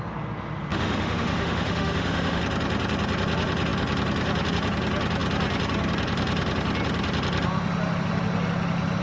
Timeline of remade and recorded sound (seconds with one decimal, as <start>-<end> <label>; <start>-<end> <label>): 0.0-0.7 recorded; 0.7-2.4 remade; 2.4-9.0 recorded